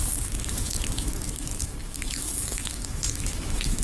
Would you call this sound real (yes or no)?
no